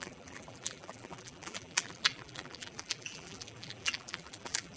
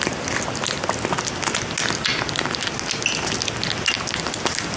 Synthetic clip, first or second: first